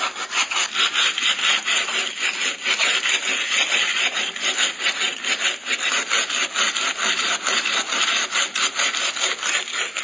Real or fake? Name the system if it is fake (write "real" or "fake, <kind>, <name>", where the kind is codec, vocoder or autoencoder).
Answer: real